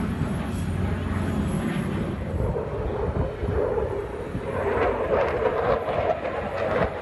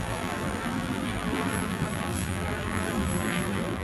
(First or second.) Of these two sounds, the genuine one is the first